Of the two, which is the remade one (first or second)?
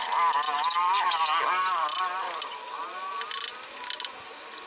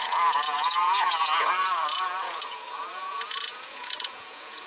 second